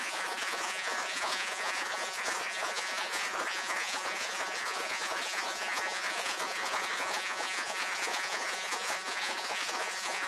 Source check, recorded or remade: remade